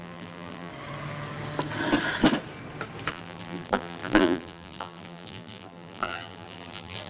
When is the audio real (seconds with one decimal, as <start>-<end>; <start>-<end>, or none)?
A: 0.7-3.1